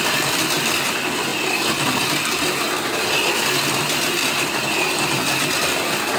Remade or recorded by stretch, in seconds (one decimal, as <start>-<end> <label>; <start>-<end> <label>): 0.0-6.2 recorded